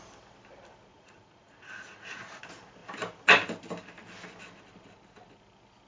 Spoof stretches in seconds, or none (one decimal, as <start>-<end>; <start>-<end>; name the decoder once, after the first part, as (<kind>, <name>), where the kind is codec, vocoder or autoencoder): 0.9-2.4 (vocoder, Vocos)